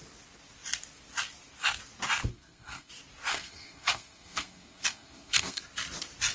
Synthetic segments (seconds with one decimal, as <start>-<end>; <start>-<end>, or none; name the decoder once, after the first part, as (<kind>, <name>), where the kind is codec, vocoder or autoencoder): 2.3-2.9 (codec, SNAC); 3.3-5.6